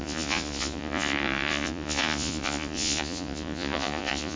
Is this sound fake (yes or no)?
yes